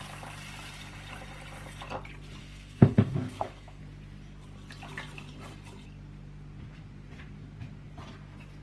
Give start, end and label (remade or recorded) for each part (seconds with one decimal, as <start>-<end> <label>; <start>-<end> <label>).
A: 0.0-2.4 recorded; 2.4-3.8 remade; 3.8-8.6 recorded

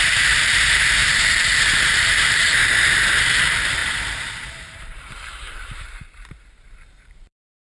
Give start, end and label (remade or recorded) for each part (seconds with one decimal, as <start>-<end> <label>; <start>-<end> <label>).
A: 0.0-1.0 remade; 1.0-1.8 recorded; 1.8-2.6 remade; 2.6-3.4 recorded; 3.4-3.8 remade; 3.8-4.5 recorded; 4.5-7.6 remade